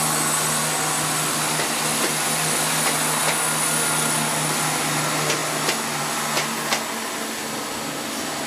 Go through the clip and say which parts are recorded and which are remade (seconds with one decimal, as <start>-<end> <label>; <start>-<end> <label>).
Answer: 0.0-8.5 recorded